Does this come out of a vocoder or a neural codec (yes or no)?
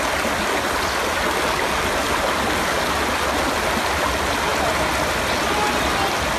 no